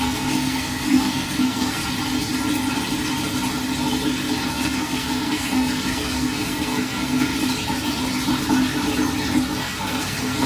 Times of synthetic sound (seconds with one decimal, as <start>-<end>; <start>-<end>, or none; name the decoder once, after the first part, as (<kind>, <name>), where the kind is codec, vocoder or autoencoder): 0.0-1.8 (codec, SNAC); 4.5-7.3; 9.6-10.5